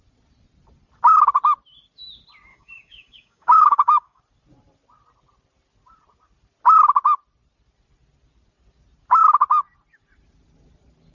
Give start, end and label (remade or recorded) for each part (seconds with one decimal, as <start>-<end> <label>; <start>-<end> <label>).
0.0-2.5 recorded; 2.5-4.2 remade; 4.2-11.1 recorded